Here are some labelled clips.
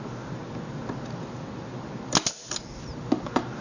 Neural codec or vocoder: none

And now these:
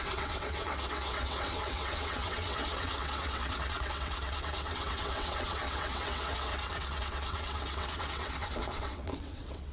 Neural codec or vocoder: vocoder, WaveNeXt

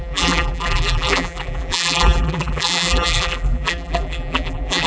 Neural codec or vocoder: vocoder, BigVGAN v2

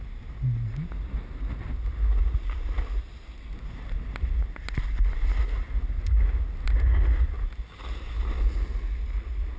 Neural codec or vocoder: none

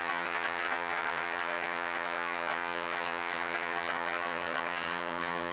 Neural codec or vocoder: vocoder, HiFi-GAN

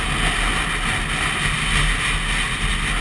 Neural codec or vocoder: none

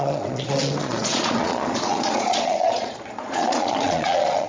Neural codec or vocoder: vocoder, Vocos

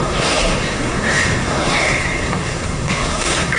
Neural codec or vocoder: codec, SNAC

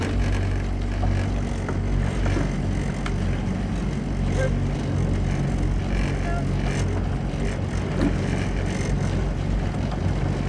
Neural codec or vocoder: none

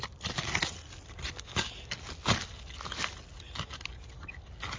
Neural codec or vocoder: none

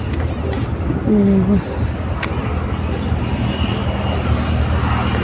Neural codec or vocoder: none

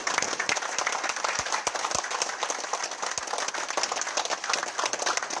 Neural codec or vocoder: none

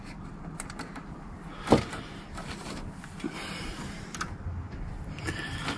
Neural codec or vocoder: none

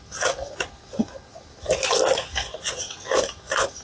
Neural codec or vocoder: none